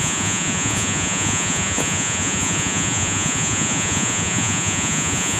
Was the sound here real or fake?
fake